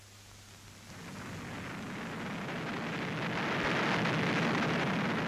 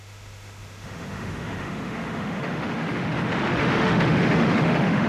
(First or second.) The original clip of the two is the first